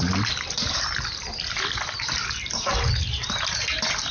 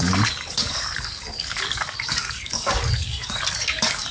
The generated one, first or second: second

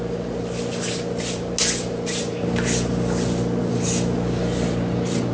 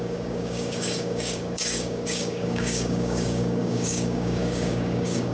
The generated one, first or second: second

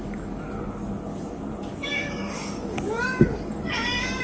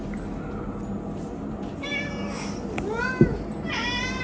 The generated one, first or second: first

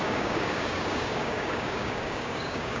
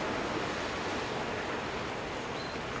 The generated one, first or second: first